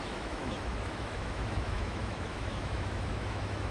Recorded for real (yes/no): no